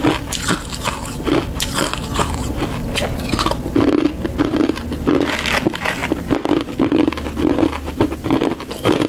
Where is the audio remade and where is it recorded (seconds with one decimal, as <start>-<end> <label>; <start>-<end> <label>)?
0.0-6.0 recorded; 6.0-9.1 remade